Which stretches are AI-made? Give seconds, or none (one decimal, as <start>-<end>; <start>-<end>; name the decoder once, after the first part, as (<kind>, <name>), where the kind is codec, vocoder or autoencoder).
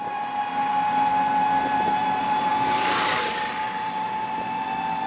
none